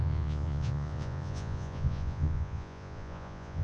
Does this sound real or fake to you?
fake